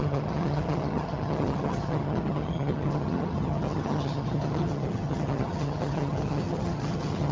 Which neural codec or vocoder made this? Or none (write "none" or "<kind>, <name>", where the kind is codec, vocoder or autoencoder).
vocoder, HiFi-GAN